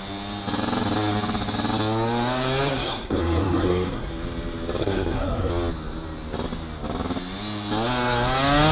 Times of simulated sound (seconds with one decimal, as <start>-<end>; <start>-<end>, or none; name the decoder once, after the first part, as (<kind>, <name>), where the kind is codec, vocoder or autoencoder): 2.7-4.1 (codec, SNAC); 4.8-5.5